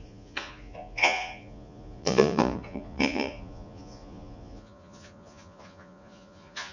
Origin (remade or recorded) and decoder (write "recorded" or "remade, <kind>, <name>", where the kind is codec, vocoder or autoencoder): remade, vocoder, Vocos